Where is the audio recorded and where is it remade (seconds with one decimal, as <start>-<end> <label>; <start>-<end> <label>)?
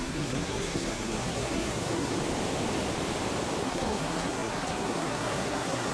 0.0-2.2 remade; 2.2-3.6 recorded; 3.6-5.9 remade